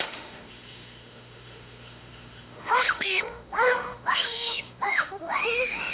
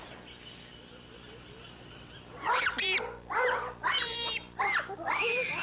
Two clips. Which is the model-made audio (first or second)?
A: first